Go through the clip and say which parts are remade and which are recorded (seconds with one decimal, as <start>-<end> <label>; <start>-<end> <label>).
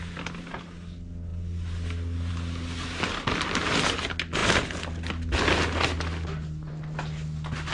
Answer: 0.0-7.7 recorded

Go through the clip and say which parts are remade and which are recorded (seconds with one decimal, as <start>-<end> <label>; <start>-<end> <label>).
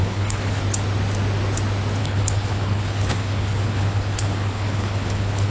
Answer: 0.0-0.6 remade; 0.6-2.0 recorded; 2.0-5.5 remade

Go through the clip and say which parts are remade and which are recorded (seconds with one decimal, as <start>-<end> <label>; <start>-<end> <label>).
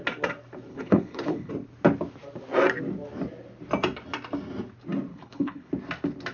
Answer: 0.0-0.7 recorded; 0.7-1.5 remade; 1.5-5.1 recorded; 5.1-5.7 remade; 5.7-6.3 recorded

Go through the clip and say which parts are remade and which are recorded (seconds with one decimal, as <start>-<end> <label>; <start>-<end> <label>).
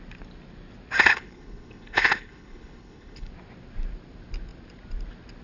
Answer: 0.0-1.1 recorded; 1.1-3.3 remade; 3.3-5.4 recorded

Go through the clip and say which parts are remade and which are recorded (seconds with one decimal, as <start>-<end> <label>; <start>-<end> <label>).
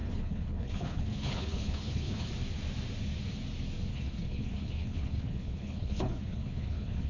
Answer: 0.0-2.3 remade; 2.3-3.9 recorded; 3.9-7.1 remade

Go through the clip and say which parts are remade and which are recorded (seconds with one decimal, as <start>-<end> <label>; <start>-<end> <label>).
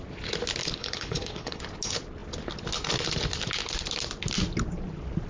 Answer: 0.0-0.6 recorded; 0.6-1.6 remade; 1.6-5.3 recorded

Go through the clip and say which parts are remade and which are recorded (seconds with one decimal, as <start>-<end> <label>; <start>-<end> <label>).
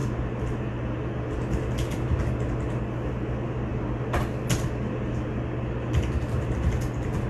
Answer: 0.0-7.3 recorded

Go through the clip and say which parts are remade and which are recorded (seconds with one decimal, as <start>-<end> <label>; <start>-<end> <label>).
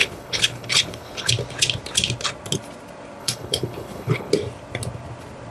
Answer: 0.0-1.3 remade; 1.3-3.2 recorded; 3.2-4.3 remade; 4.3-5.5 recorded